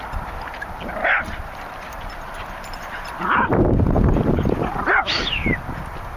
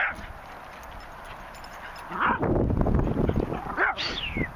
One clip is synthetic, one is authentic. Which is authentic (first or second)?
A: second